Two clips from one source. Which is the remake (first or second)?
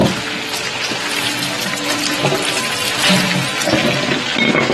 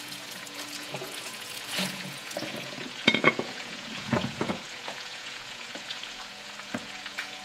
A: second